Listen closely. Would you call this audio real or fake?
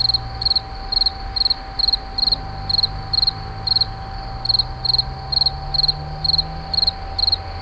real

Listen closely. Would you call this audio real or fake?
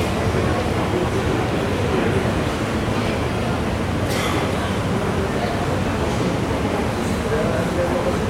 real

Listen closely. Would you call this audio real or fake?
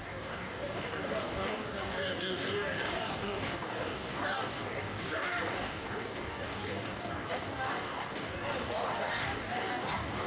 fake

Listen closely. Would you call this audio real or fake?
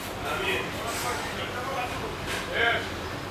real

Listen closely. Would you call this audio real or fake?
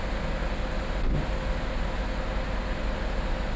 real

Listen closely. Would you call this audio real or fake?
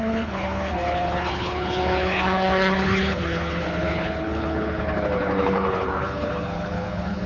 fake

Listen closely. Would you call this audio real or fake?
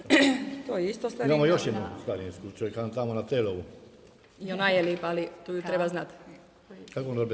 real